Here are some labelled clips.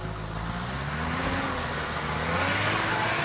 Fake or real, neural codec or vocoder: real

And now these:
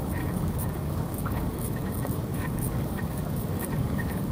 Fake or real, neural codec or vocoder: fake, codec, DAC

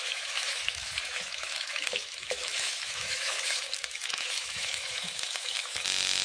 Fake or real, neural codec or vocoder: fake, autoencoder, DAC-VAE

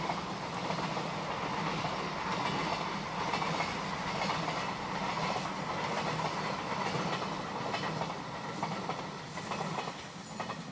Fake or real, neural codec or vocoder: real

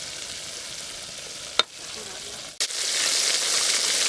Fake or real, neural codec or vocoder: real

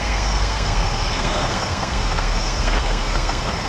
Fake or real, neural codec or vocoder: fake, codec, SNAC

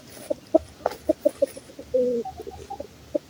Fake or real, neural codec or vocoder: real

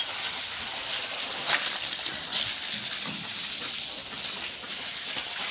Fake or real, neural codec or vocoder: real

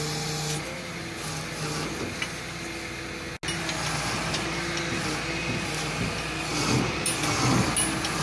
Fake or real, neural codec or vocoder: real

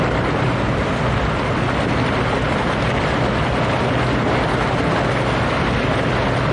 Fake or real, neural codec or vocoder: real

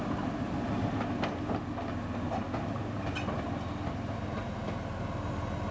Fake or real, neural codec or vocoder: real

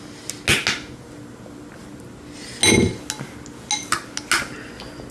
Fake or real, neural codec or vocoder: real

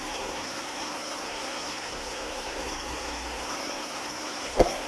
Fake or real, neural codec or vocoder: fake, codec, SNAC